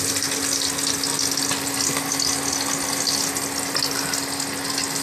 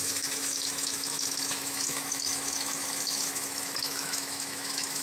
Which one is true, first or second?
first